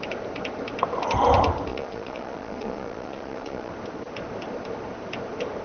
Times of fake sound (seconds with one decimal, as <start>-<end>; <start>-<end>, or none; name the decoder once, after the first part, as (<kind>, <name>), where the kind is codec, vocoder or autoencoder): 1.7-3.7 (vocoder, Vocos)